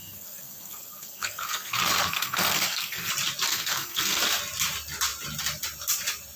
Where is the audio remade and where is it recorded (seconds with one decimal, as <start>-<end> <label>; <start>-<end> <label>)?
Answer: 0.0-3.1 remade; 3.1-3.5 recorded; 3.5-4.2 remade; 4.2-6.4 recorded